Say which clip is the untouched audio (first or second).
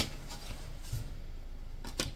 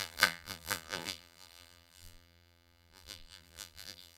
first